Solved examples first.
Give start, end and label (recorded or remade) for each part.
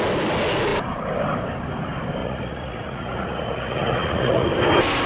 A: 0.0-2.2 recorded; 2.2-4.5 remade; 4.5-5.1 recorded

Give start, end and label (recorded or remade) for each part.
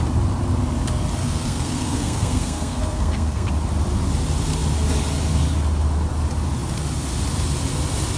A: 0.0-1.2 recorded; 1.2-3.5 remade; 3.5-8.2 recorded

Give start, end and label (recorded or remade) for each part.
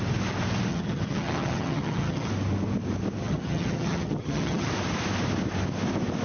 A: 0.0-0.7 recorded; 0.7-2.3 remade; 2.3-3.2 recorded; 3.2-4.7 remade; 4.7-6.2 recorded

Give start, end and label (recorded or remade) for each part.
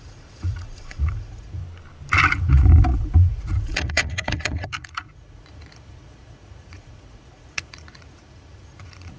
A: 0.0-1.6 remade; 1.6-2.3 recorded; 2.3-9.2 remade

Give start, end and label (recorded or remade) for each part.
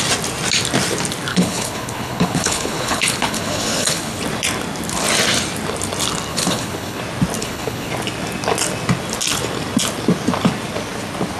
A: 0.0-1.3 recorded; 1.3-4.2 remade; 4.2-6.3 recorded; 6.3-7.0 remade; 7.0-7.4 recorded; 7.4-7.9 remade; 7.9-11.4 recorded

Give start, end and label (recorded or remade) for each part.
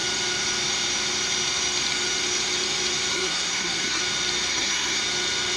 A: 0.0-3.1 recorded; 3.1-4.0 remade; 4.0-4.5 recorded; 4.5-5.0 remade; 5.0-5.6 recorded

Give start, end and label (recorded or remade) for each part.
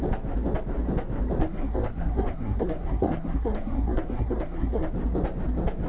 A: 0.0-1.4 recorded; 1.4-4.9 remade; 4.9-5.9 recorded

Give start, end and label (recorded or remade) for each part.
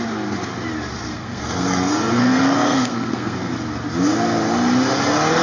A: 0.0-1.1 recorded; 1.1-3.5 remade; 3.5-5.4 recorded